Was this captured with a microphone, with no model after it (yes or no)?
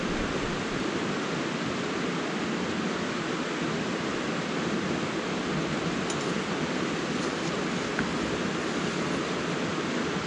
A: yes